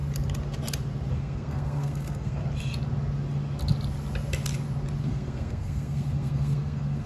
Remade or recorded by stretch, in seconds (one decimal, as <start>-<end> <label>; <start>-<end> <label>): 0.0-1.1 recorded; 1.1-2.4 remade; 2.4-5.0 recorded; 5.0-7.1 remade